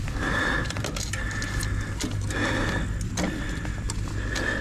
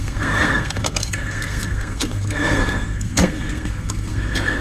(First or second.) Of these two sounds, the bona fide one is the first